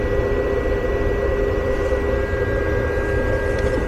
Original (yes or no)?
yes